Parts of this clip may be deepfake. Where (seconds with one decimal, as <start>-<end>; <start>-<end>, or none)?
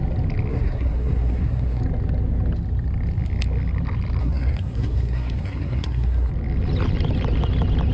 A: 0.5-1.8; 4.2-6.3